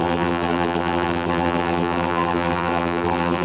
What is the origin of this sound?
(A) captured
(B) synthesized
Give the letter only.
B